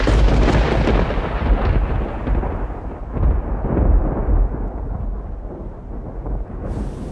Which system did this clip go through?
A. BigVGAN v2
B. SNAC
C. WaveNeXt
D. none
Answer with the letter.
D